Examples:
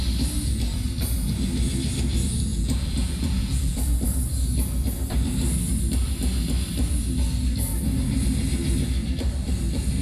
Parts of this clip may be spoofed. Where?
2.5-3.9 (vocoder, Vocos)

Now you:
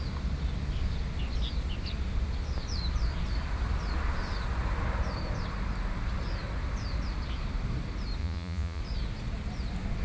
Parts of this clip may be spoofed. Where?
8.2-8.8 (vocoder, Vocos)

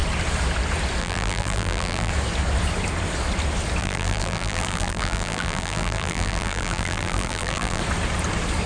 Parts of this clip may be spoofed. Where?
1.0-2.1 (vocoder, BigVGAN v2); 3.8-7.8

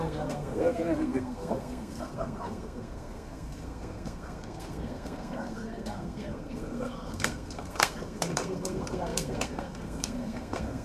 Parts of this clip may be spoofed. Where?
0.0-10.8 (codec, SNAC)